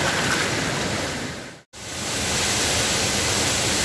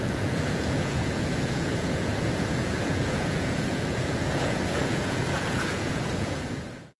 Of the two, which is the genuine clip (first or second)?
first